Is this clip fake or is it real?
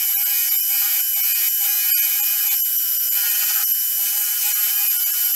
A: fake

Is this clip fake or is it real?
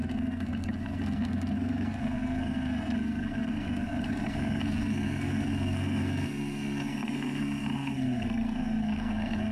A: fake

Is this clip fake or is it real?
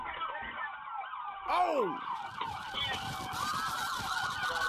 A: real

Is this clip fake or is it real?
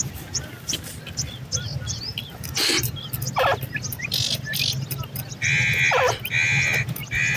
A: real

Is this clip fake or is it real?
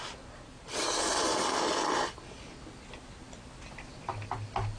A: real